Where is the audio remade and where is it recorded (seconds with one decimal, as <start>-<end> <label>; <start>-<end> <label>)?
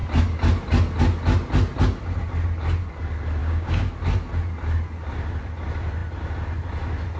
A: 0.0-3.4 recorded; 3.4-3.9 remade; 3.9-7.2 recorded